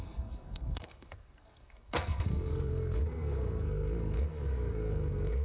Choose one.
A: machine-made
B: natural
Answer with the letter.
A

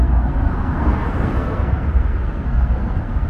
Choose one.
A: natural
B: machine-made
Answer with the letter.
B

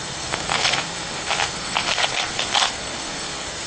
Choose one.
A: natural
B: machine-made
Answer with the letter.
B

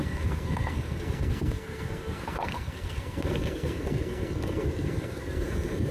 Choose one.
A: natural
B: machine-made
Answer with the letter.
B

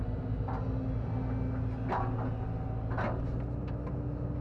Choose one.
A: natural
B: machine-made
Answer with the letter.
A